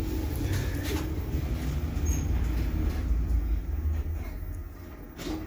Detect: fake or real real